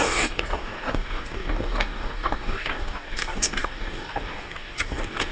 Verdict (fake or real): fake